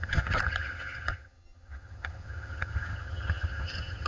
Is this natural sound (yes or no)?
no